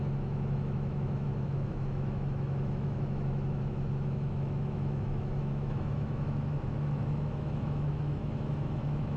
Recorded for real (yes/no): no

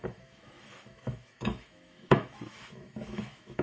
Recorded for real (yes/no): no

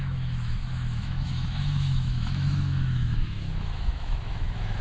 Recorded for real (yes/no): no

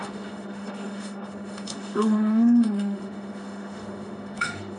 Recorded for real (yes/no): no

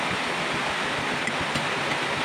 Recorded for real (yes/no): yes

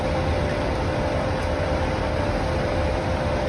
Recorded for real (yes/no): yes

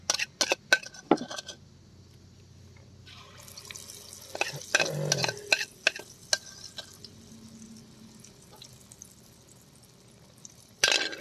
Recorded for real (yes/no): yes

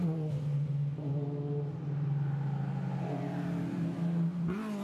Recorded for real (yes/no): yes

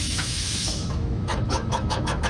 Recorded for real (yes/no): no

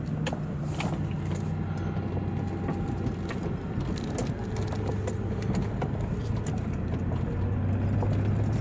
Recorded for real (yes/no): yes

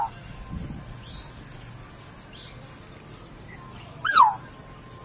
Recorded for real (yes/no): yes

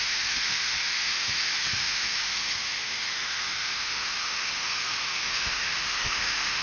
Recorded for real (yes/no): no